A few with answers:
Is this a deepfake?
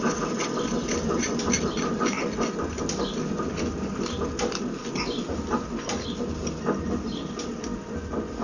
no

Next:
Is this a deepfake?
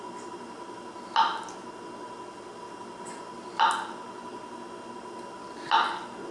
no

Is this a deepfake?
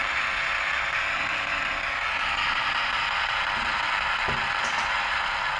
no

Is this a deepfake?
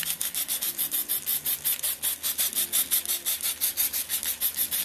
no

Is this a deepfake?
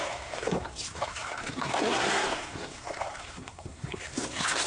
yes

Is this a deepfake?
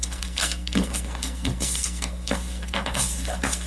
yes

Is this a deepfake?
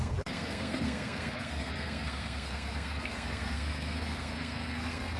yes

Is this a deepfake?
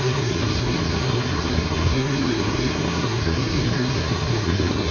yes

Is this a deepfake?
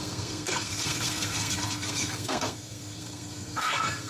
yes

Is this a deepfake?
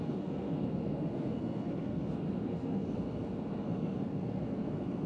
yes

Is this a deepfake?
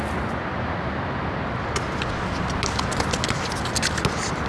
no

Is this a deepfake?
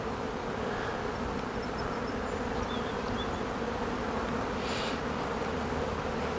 no